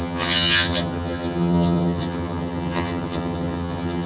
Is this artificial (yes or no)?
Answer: yes